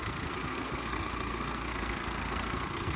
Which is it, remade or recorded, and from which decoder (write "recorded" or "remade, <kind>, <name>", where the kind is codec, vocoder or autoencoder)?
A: remade, codec, SNAC